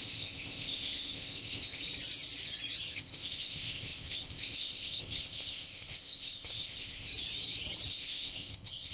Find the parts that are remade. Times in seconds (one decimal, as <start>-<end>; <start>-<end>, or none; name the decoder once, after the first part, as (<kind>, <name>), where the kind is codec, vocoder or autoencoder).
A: 0.0-1.8 (codec, ZipCodec); 2.9-7.1; 7.9-8.9